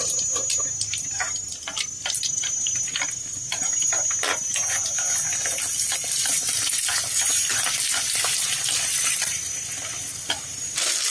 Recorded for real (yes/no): yes